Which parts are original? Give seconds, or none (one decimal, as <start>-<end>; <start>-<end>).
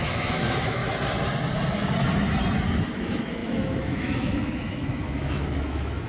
0.8-2.8